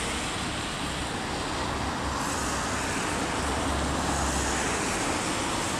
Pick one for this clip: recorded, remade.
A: recorded